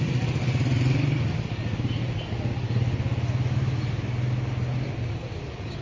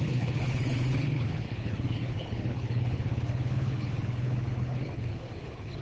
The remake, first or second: second